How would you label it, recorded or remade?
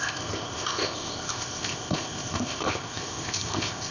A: remade